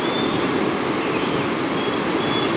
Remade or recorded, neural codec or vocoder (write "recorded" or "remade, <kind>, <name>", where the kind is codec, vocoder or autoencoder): recorded